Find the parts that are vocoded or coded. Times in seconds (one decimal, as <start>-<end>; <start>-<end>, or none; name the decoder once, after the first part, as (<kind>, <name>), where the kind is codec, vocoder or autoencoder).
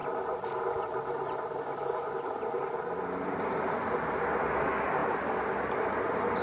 none